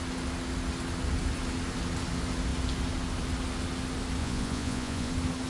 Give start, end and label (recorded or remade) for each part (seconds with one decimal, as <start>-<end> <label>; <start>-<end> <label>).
0.0-4.2 recorded; 4.2-5.1 remade; 5.1-5.5 recorded